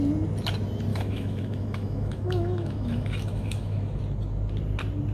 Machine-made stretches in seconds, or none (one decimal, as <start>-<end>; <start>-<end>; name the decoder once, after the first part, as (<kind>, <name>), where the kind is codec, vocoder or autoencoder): 0.9-4.0 (autoencoder, DAC-VAE)